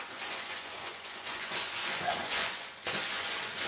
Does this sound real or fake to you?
fake